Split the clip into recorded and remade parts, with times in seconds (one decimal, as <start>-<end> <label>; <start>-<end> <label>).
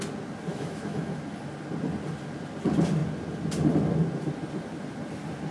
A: 0.0-0.5 recorded; 0.5-1.2 remade; 1.2-5.5 recorded